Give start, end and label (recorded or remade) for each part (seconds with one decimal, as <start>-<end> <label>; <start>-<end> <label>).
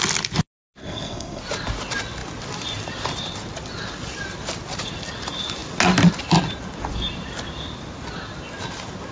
0.0-0.8 recorded; 0.8-1.4 remade; 1.4-9.1 recorded